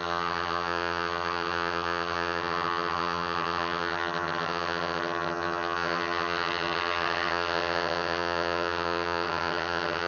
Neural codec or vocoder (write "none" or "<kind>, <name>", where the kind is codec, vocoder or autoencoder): vocoder, HiFi-GAN